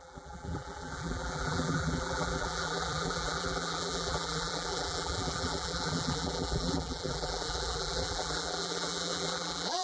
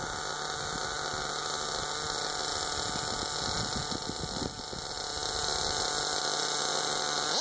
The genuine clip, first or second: second